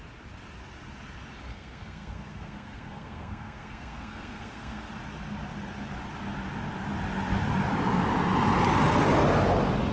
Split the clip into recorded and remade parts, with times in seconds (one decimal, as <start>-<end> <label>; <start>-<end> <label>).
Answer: 0.0-1.5 recorded; 1.5-4.9 remade; 4.9-9.9 recorded

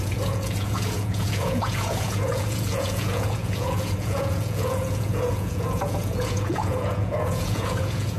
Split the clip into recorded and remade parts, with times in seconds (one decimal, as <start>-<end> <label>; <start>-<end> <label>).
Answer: 0.0-8.2 remade

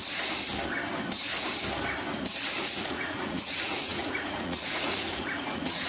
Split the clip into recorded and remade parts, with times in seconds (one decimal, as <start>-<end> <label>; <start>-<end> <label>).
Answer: 0.0-2.7 recorded; 2.7-5.9 remade

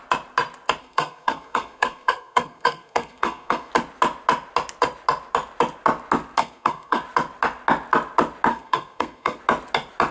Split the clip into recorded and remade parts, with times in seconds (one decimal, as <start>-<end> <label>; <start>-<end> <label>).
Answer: 0.0-0.8 recorded; 0.8-3.7 remade; 3.7-6.4 recorded; 6.4-7.0 remade; 7.0-8.5 recorded; 8.5-9.4 remade; 9.4-10.1 recorded

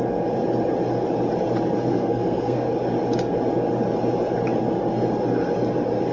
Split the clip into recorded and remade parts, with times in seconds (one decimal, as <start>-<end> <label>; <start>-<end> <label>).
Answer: 0.0-1.9 recorded; 1.9-2.7 remade; 2.7-6.1 recorded